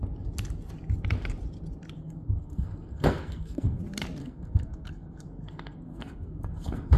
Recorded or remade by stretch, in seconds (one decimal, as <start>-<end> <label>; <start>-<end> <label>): 0.0-2.0 recorded; 2.0-3.8 remade; 3.8-4.2 recorded; 4.2-7.0 remade